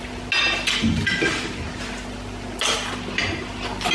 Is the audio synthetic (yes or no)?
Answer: no